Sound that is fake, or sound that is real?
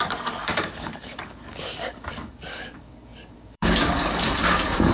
fake